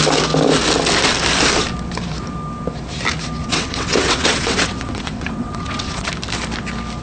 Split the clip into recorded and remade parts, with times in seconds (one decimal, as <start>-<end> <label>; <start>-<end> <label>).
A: 0.0-3.4 recorded; 3.4-6.1 remade; 6.1-7.0 recorded